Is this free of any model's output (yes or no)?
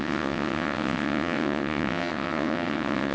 no